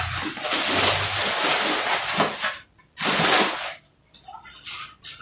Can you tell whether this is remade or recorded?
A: recorded